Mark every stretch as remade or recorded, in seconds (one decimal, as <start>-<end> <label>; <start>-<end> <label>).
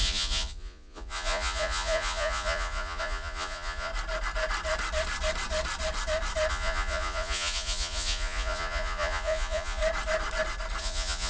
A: 0.0-3.9 remade; 3.9-6.5 recorded; 6.5-9.8 remade; 9.8-10.8 recorded; 10.8-11.3 remade